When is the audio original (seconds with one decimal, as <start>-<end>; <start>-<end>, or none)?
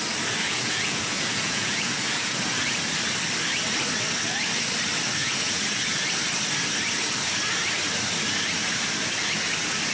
0.0-0.4; 2.3-5.2; 5.9-9.9